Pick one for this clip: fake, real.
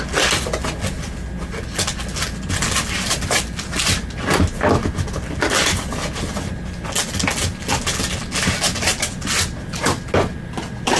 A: real